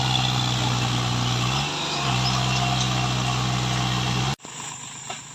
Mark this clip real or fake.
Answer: real